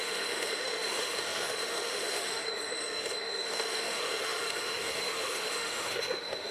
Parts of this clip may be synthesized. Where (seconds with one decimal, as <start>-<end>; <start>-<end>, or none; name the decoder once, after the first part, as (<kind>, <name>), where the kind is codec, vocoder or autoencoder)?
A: 0.0-6.5 (autoencoder, DAC-VAE)